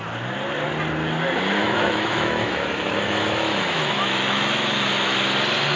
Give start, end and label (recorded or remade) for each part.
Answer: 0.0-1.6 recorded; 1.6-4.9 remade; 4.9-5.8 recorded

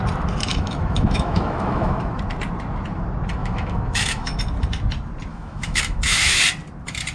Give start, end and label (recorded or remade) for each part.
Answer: 0.0-0.5 recorded; 0.5-2.2 remade; 2.2-3.4 recorded; 3.4-4.4 remade; 4.4-5.3 recorded; 5.3-6.4 remade; 6.4-7.1 recorded

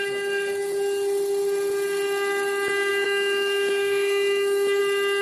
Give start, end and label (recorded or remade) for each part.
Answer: 0.0-2.9 recorded; 2.9-4.8 remade; 4.8-5.2 recorded

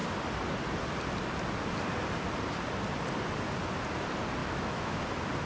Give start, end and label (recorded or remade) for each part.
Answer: 0.0-4.4 recorded; 4.4-5.0 remade; 5.0-5.5 recorded

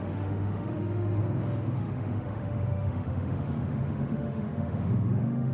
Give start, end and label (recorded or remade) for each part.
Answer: 0.0-1.2 remade; 1.2-1.8 recorded; 1.8-5.5 remade

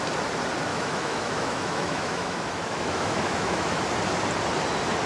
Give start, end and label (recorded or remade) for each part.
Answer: 0.0-0.7 recorded; 0.7-3.8 remade; 3.8-5.1 recorded

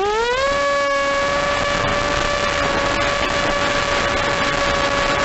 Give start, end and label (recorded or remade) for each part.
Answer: 0.0-5.2 recorded

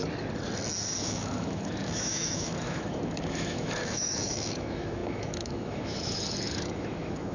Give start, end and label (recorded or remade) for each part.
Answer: 0.0-1.0 recorded; 1.0-7.3 remade